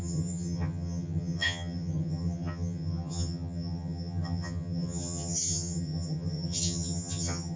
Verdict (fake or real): fake